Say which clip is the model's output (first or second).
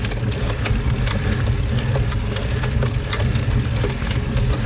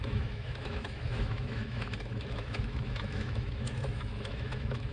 second